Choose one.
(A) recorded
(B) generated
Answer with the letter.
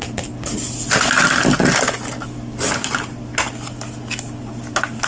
A